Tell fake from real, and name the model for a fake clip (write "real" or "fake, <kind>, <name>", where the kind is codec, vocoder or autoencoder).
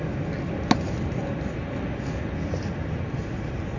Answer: real